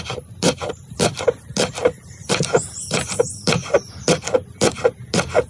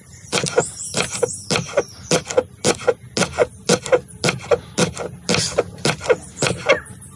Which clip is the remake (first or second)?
first